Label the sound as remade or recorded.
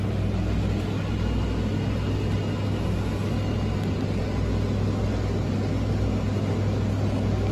recorded